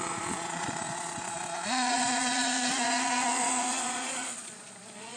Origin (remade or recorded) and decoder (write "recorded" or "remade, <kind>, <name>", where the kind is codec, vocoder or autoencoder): remade, vocoder, Vocos